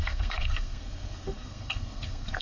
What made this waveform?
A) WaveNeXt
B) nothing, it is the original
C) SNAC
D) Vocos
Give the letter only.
C